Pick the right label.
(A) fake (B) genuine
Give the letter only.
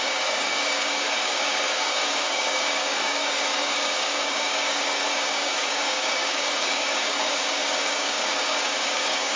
A